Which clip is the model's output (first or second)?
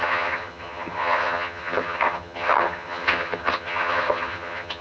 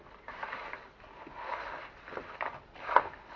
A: first